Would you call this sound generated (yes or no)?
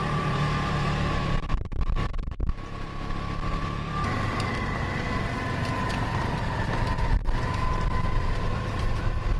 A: yes